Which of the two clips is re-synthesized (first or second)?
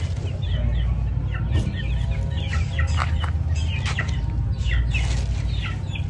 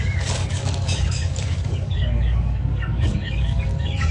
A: second